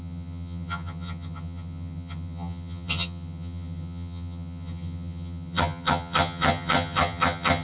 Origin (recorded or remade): remade